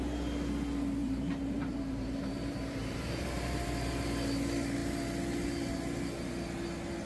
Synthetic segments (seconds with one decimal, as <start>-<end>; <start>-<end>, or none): 1.0-4.0